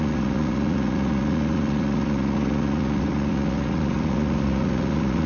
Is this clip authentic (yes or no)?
no